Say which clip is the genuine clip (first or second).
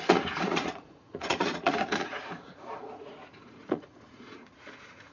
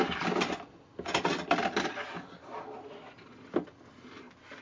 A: second